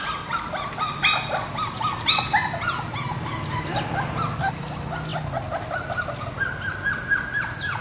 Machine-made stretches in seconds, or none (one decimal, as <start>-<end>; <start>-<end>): none